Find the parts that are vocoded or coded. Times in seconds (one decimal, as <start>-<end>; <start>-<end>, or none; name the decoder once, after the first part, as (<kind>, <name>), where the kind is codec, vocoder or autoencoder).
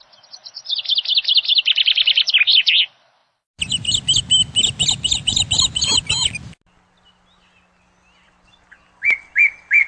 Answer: none